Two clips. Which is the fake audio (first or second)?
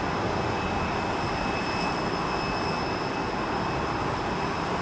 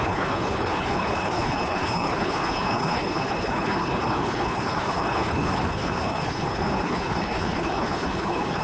second